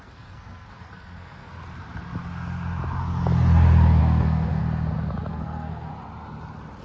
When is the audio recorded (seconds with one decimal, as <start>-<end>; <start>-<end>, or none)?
1.6-4.0; 4.6-5.3; 5.9-6.8